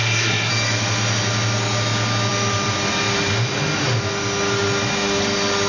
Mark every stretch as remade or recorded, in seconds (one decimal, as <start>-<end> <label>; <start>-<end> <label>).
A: 0.0-0.5 remade; 0.5-5.7 recorded